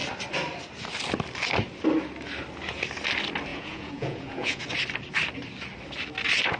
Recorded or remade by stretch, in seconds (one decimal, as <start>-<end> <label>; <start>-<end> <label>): 0.0-3.5 recorded; 3.5-4.6 remade; 4.6-6.6 recorded

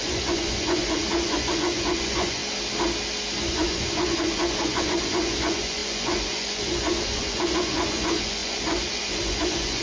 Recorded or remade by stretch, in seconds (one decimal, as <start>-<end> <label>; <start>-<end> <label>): 0.0-2.4 remade; 2.4-3.4 recorded; 3.4-9.8 remade

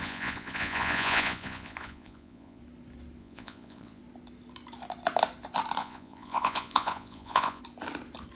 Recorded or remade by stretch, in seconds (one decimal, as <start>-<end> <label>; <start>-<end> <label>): 0.0-2.6 remade; 2.6-3.2 recorded; 3.2-4.0 remade; 4.0-5.8 recorded; 5.8-7.6 remade; 7.6-8.4 recorded

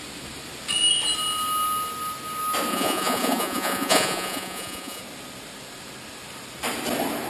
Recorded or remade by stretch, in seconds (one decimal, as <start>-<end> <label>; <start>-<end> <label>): 0.0-2.7 recorded; 2.7-5.0 remade; 5.0-7.3 recorded

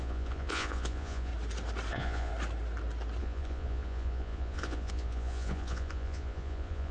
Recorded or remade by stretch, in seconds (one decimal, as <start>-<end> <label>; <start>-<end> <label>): 0.0-1.3 remade; 1.3-1.9 recorded; 1.9-2.3 remade; 2.3-3.2 recorded; 3.2-6.9 remade